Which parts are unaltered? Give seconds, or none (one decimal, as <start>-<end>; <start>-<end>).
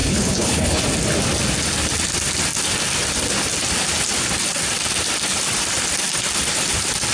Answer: 0.8-7.1